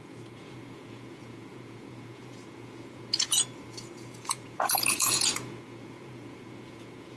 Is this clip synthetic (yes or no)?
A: yes